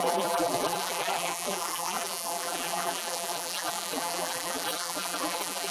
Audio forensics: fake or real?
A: fake